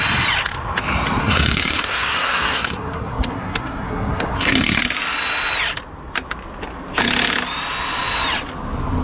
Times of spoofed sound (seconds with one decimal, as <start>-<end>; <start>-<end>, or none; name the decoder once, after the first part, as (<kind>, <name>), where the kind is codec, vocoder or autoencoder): 1.2-4.8 (codec, SNAC)